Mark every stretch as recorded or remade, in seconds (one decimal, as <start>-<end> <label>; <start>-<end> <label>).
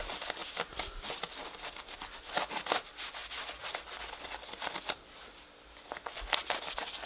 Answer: 0.0-7.1 recorded